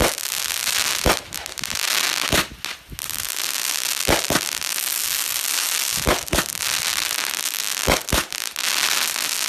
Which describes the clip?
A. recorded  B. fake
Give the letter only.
A